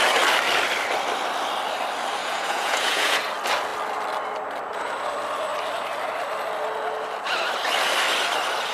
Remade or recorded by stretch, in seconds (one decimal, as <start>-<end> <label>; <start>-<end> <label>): 0.0-2.2 recorded; 2.2-3.2 remade; 3.2-8.7 recorded